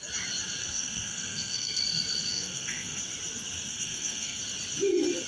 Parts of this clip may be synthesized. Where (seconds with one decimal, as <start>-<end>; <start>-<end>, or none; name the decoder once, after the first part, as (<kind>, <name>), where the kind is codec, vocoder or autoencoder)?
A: 0.6-1.8 (codec, SNAC); 2.3-3.0; 3.7-4.4